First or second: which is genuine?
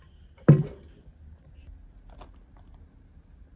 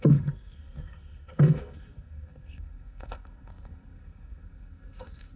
first